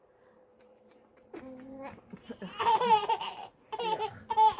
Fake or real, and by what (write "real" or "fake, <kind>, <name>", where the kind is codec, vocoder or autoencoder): fake, vocoder, BigVGAN v2